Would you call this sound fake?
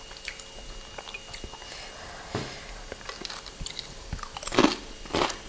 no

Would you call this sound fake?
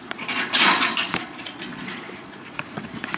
yes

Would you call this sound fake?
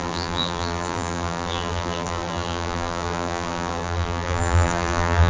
yes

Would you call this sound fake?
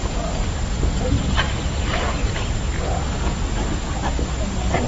no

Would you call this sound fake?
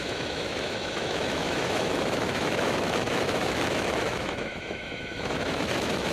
yes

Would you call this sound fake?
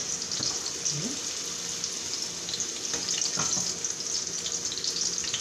no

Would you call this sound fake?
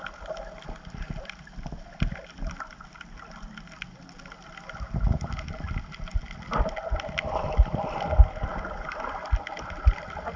no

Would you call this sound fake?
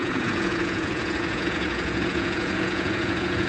yes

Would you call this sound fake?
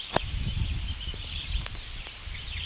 yes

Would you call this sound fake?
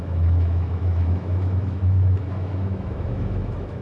yes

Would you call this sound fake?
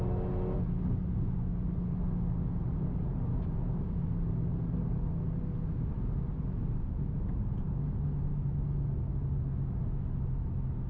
no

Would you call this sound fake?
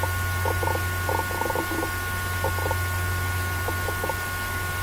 no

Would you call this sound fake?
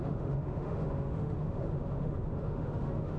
yes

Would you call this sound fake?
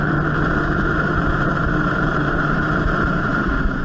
yes